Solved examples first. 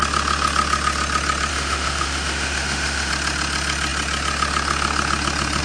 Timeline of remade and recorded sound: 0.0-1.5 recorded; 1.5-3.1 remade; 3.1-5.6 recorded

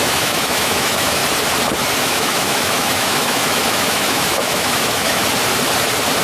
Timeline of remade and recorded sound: 0.0-1.2 remade; 1.2-2.0 recorded; 2.0-5.2 remade; 5.2-6.2 recorded

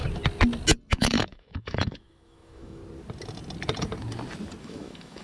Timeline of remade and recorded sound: 0.0-0.9 recorded; 0.9-2.8 remade; 2.8-4.6 recorded; 4.6-5.2 remade

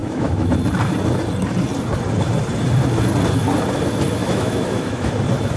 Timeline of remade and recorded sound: 0.0-0.5 remade; 0.5-4.2 recorded; 4.2-5.1 remade; 5.1-5.6 recorded

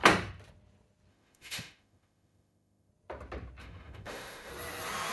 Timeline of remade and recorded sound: 0.0-1.1 recorded; 1.1-2.9 remade; 2.9-3.6 recorded; 3.6-4.5 remade; 4.5-5.1 recorded

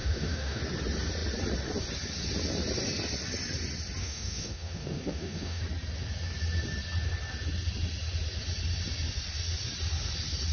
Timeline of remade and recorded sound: 0.0-0.6 remade; 0.6-4.0 recorded; 4.0-5.6 remade; 5.6-10.5 recorded